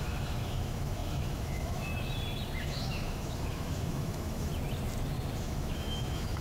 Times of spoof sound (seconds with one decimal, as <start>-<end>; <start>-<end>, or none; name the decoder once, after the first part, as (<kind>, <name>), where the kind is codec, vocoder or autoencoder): 0.0-1.9 (autoencoder, DAC-VAE); 2.6-4.5; 5.4-6.4

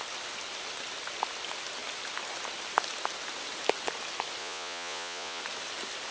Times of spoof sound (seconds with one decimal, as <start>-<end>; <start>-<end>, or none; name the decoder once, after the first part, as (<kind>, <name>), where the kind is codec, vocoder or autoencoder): 4.4-5.4 (vocoder, Vocos)

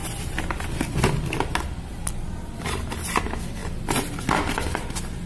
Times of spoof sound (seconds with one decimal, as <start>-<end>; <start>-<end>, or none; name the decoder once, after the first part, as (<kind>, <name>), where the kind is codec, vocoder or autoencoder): none

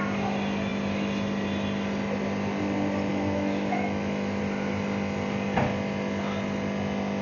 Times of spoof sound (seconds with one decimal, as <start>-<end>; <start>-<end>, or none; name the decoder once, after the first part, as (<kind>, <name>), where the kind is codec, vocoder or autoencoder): 3.1-4.4 (autoencoder, DAC-VAE)

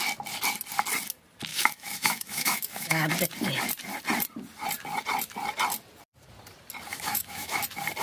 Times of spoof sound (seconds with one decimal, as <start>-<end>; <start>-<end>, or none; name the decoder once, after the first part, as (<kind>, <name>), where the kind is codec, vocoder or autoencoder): 1.5-3.1 (autoencoder, DAC-VAE); 6.9-7.6

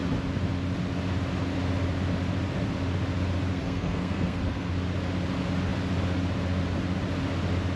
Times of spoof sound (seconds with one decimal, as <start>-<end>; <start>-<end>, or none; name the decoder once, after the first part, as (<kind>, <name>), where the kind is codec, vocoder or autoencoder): 3.5-4.7 (codec, SNAC)

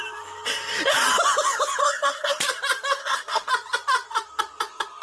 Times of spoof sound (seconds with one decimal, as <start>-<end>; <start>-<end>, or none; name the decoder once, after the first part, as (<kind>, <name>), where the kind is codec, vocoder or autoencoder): 1.8-2.4 (codec, SNAC); 3.0-3.5

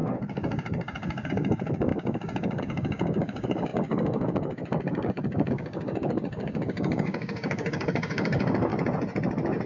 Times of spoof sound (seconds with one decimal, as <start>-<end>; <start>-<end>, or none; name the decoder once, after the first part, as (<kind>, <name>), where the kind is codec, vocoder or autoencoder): 0.0-8.7 (codec, DAC)